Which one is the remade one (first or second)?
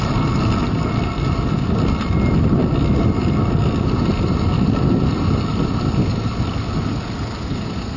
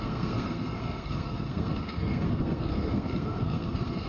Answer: second